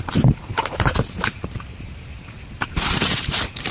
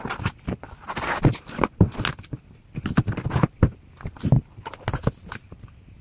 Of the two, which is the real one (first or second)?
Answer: second